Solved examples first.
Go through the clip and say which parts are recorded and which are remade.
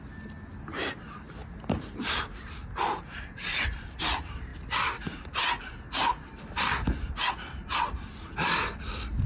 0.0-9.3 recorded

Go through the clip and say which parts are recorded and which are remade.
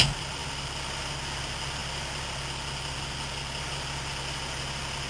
0.0-5.1 recorded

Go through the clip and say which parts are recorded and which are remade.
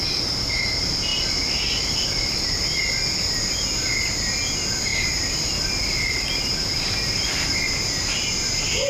0.0-1.1 recorded; 1.1-2.8 remade; 2.8-4.9 recorded; 4.9-8.1 remade; 8.1-8.9 recorded